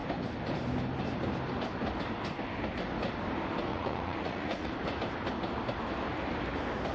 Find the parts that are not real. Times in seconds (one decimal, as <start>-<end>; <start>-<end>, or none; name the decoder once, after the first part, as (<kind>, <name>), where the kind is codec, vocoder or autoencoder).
3.7-4.7 (vocoder, Vocos)